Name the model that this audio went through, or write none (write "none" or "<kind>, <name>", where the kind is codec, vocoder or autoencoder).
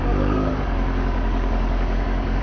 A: codec, DAC